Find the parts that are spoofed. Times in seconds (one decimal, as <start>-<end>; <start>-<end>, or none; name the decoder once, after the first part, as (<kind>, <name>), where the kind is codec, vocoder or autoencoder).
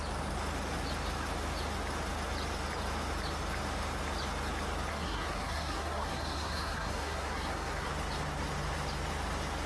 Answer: 4.9-7.9 (codec, SNAC)